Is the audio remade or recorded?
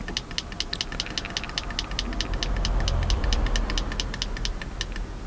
recorded